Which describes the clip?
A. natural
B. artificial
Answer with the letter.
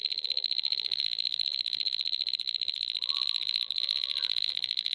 B